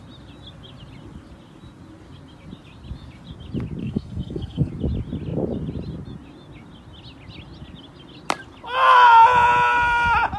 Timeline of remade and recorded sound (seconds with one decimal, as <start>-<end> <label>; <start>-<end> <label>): 0.0-3.8 recorded; 3.8-4.7 remade; 4.7-10.4 recorded